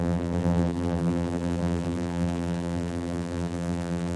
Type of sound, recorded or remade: remade